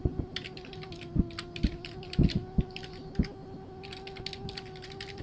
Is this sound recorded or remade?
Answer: recorded